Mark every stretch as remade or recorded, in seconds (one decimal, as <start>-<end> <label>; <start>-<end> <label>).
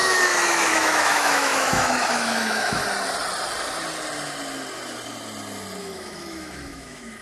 0.0-2.8 remade; 2.8-5.8 recorded; 5.8-7.2 remade